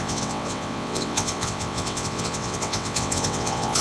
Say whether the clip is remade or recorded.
remade